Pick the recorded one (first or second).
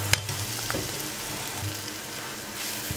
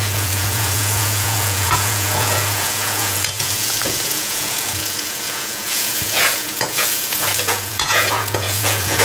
first